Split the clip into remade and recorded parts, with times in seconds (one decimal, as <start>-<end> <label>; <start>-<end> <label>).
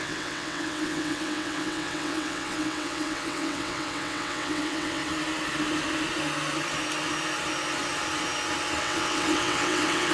0.0-5.0 remade; 5.0-8.8 recorded; 8.8-10.1 remade